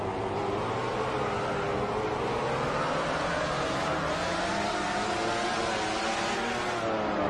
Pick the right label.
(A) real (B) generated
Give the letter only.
A